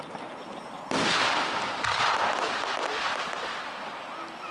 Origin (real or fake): fake